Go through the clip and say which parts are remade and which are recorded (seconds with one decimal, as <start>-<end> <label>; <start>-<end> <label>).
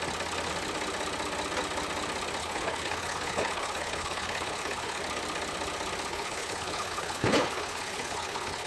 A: 0.0-2.4 recorded; 2.4-5.0 remade; 5.0-6.1 recorded; 6.1-8.7 remade